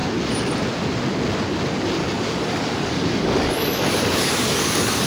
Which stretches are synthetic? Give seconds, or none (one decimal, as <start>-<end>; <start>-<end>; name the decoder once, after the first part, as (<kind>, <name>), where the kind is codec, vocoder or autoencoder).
2.0-5.1 (codec, DAC)